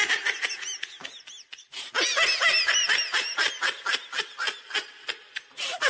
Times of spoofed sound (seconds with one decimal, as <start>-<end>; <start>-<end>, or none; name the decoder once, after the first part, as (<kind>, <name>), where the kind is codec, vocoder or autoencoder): none